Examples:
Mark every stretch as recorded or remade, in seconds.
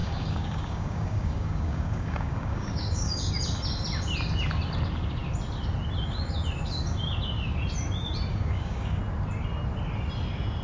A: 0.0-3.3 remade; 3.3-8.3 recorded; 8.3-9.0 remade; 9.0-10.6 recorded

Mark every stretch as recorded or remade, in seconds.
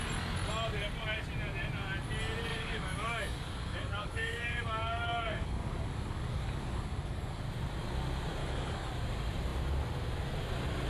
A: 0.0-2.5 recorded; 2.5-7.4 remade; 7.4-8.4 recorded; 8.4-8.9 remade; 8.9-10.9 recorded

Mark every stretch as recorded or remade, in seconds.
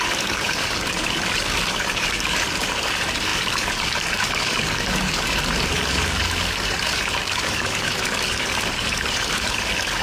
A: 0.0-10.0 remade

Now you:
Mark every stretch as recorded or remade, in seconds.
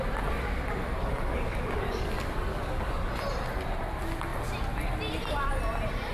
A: 0.0-1.0 recorded; 1.0-2.1 remade; 2.1-2.5 recorded; 2.5-3.1 remade; 3.1-6.1 recorded